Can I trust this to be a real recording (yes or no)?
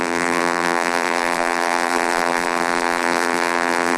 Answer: no